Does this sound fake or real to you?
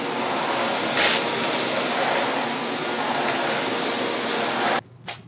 real